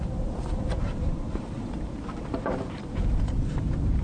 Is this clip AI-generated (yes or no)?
yes